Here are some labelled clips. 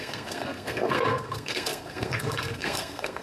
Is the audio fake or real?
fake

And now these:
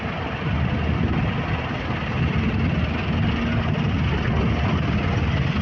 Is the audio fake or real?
real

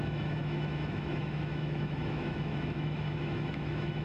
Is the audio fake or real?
fake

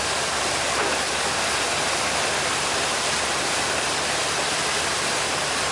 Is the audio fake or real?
fake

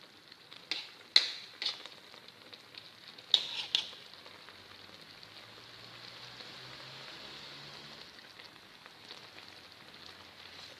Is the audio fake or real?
real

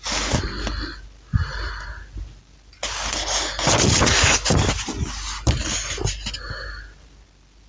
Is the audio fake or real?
real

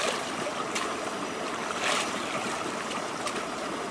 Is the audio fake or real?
fake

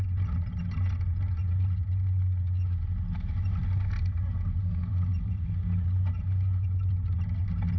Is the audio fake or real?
real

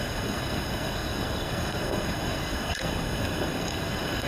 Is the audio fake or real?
fake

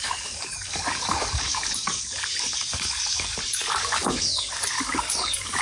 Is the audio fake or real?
fake